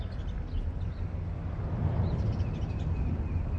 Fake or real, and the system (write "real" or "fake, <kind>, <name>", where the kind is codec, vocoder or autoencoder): real